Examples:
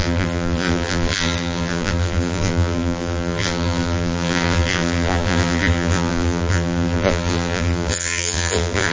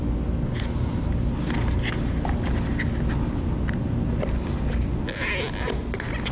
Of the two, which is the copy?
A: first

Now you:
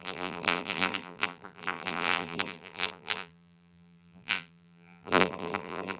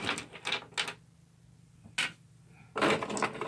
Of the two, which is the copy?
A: first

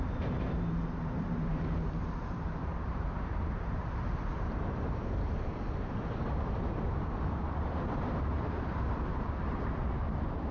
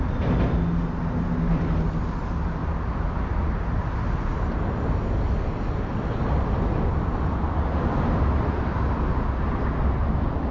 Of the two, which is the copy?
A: first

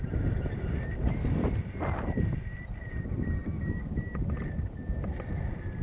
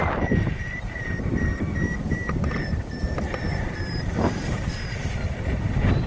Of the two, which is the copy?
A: second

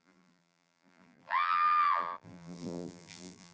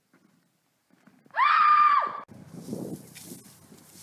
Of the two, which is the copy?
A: first